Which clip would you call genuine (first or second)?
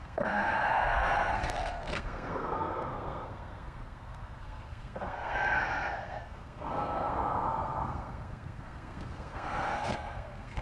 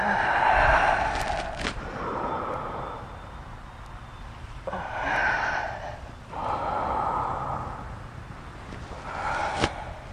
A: second